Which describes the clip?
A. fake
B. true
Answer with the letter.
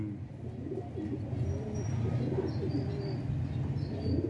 B